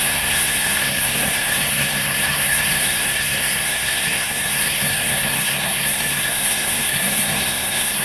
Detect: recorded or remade remade